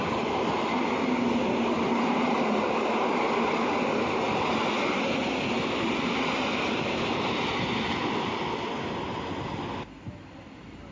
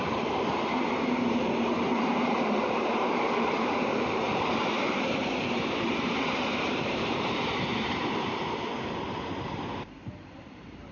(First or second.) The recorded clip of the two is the first